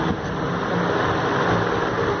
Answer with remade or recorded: recorded